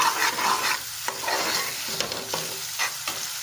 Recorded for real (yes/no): yes